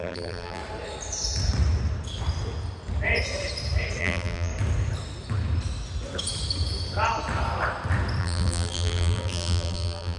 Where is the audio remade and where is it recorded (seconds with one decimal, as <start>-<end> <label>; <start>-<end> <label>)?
0.0-0.6 remade; 0.6-4.0 recorded; 4.0-4.5 remade; 4.5-8.2 recorded; 8.2-10.2 remade